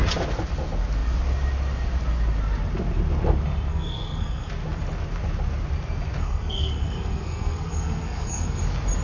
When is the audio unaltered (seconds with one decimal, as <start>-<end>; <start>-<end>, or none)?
0.0-3.7; 4.5-6.2; 8.6-9.0